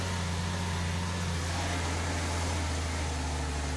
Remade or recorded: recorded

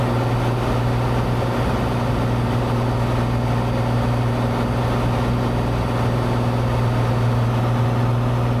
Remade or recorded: recorded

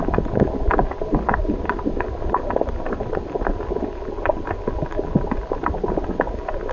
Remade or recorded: recorded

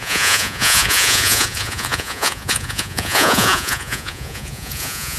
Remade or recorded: remade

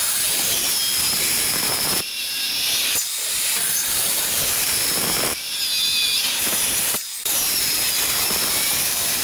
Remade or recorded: remade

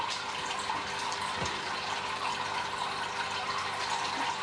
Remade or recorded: recorded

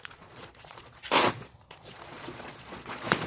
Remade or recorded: remade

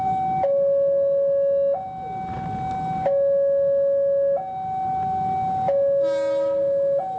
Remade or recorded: recorded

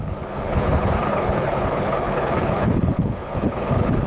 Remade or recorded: remade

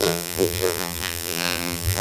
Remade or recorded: remade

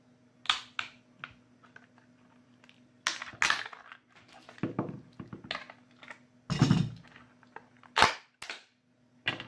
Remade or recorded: recorded